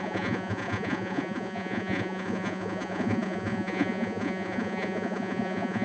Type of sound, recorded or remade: remade